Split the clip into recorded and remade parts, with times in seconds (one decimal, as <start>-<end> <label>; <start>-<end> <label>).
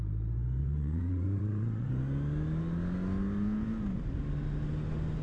0.0-0.6 recorded; 0.6-1.9 remade; 1.9-5.2 recorded